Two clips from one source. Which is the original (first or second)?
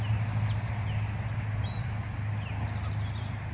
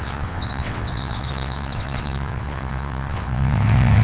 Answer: first